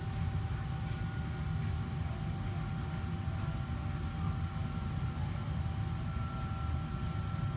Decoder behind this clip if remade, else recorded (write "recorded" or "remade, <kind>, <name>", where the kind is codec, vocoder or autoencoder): recorded